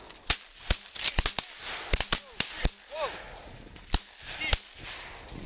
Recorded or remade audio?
recorded